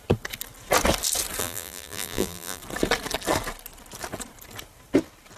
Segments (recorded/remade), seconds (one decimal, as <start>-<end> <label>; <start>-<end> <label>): 0.0-1.4 recorded; 1.4-2.6 remade; 2.6-5.4 recorded